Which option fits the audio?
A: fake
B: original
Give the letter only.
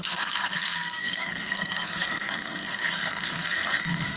A